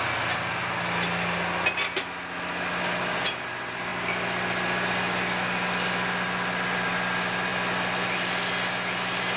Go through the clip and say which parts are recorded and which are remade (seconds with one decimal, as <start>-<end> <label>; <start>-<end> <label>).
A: 0.0-9.4 recorded